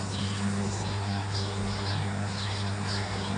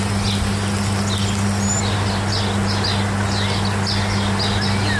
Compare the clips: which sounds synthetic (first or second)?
first